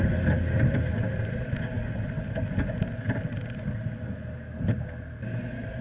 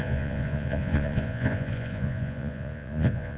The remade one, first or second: second